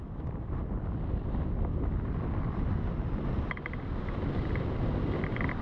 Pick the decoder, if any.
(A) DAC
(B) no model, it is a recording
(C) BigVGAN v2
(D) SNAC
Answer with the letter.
B